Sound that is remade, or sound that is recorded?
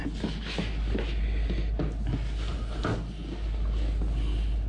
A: recorded